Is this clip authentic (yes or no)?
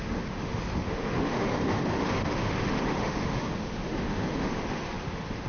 no